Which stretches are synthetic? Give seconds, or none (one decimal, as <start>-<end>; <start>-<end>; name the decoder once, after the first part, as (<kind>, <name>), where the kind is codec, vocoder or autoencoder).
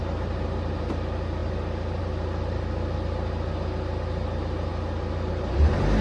none